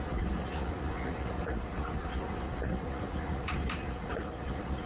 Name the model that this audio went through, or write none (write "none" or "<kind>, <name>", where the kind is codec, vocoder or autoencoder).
vocoder, Vocos